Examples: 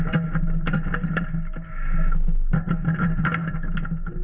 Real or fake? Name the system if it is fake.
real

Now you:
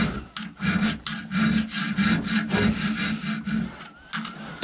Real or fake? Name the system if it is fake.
real